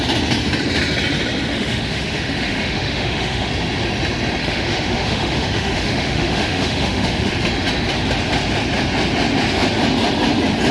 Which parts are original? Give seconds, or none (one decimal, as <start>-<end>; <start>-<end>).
0.0-1.5; 3.5-4.4; 7.3-10.7